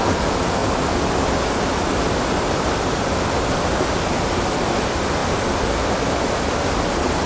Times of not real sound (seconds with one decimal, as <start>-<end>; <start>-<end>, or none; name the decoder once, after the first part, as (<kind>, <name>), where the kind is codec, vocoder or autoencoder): none